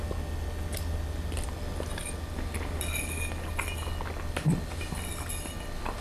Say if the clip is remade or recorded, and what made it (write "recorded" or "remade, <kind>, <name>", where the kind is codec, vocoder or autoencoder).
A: recorded